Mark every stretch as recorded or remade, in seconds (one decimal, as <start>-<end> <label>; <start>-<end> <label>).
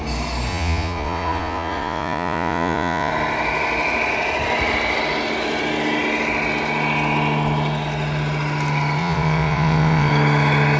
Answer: 0.0-0.5 recorded; 0.5-3.1 remade; 3.1-9.0 recorded; 9.0-10.1 remade; 10.1-10.8 recorded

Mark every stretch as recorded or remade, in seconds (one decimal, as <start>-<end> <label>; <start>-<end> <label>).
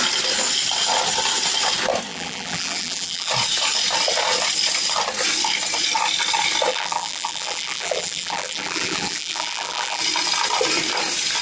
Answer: 0.0-2.1 recorded; 2.1-3.3 remade; 3.3-6.7 recorded; 6.7-10.0 remade; 10.0-11.4 recorded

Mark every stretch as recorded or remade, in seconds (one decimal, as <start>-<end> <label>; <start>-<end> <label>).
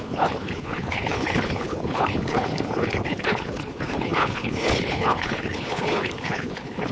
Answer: 0.0-6.9 remade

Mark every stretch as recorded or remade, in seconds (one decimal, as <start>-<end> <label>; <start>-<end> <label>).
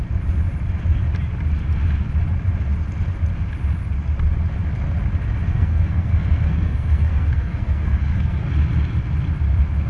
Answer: 0.0-5.5 recorded; 5.5-8.5 remade; 8.5-9.9 recorded